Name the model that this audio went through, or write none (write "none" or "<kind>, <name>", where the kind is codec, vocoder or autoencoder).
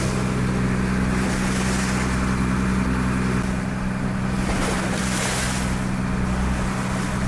none